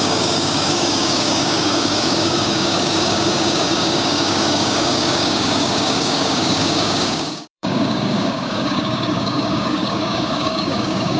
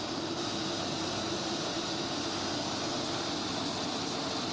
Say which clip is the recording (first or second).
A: second